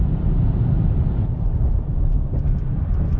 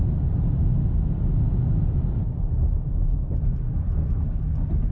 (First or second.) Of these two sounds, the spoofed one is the first